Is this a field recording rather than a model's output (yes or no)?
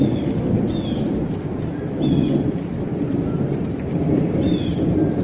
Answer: yes